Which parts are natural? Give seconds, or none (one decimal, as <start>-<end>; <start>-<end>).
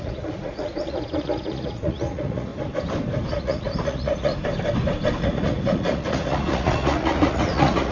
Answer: 2.5-3.3; 4.3-5.2